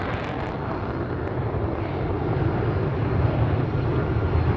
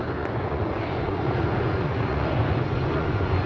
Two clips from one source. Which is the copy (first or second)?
second